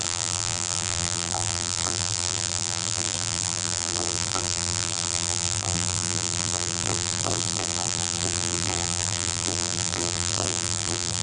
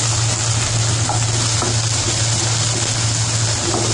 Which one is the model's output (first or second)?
first